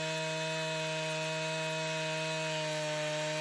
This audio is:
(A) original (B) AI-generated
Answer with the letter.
A